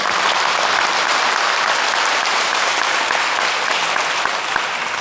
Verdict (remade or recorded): recorded